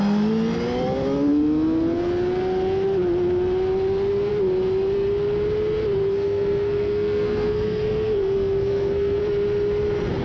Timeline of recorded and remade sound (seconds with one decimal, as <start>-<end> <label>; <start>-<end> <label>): 0.0-6.0 recorded; 6.0-9.2 remade; 9.2-10.2 recorded